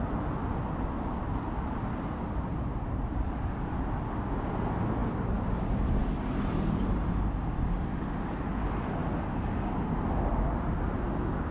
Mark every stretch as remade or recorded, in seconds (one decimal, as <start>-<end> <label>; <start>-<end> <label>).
0.0-2.5 recorded; 2.5-3.6 remade; 3.6-11.5 recorded